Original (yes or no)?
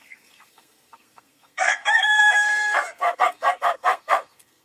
no